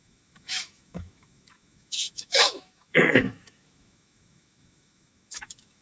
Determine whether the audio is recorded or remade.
remade